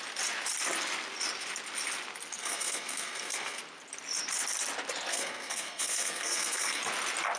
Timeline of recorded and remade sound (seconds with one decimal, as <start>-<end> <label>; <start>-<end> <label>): 0.0-2.4 recorded; 2.4-3.6 remade; 3.6-5.1 recorded; 5.1-6.8 remade; 6.8-7.4 recorded